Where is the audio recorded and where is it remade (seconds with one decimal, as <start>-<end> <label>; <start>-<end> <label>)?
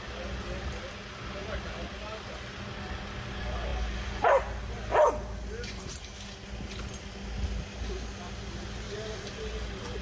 0.0-10.0 recorded